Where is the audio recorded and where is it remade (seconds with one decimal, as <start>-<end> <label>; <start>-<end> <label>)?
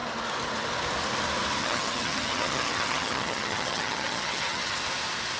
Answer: 0.0-1.6 recorded; 1.6-4.8 remade; 4.8-5.4 recorded